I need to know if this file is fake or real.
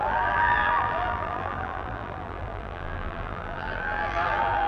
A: fake